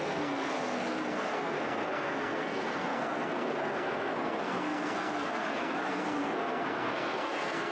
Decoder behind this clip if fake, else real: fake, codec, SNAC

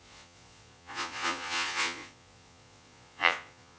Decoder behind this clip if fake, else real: fake, vocoder, Vocos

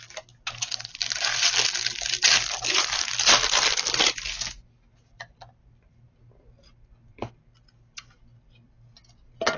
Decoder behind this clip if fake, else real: real